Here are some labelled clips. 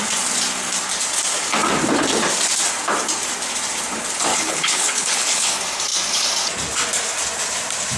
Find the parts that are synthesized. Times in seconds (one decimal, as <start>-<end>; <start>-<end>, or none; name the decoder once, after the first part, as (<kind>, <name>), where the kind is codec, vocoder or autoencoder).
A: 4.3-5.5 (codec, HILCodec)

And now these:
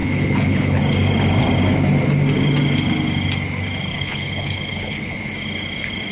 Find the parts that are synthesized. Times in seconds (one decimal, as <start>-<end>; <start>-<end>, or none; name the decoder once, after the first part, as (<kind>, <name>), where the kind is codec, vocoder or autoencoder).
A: 0.0-0.8 (codec, HILCodec); 3.9-5.2

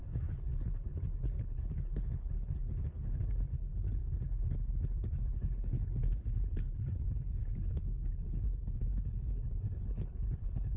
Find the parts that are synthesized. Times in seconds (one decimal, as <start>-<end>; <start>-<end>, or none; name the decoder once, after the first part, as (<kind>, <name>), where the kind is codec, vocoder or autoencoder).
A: 0.0-4.0 (codec, HILCodec); 4.5-10.8

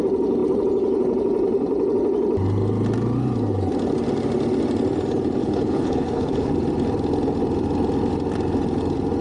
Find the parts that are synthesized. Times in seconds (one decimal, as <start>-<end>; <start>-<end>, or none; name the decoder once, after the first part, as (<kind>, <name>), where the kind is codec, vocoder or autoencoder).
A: 5.4-6.5 (codec, HILCodec)

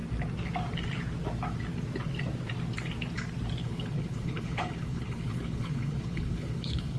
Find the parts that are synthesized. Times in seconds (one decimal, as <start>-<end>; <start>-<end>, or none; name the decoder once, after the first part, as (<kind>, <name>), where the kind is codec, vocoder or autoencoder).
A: 3.6-7.0 (codec, HILCodec)